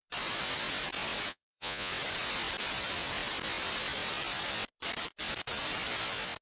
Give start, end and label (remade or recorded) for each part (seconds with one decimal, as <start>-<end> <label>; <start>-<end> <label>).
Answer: 0.0-1.3 recorded; 1.3-1.9 remade; 1.9-6.4 recorded